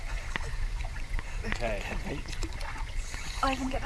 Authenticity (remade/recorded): remade